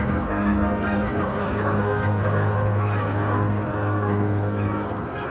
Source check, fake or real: fake